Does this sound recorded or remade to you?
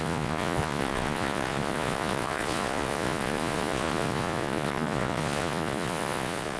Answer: remade